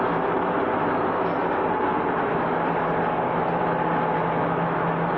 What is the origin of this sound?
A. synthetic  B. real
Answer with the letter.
B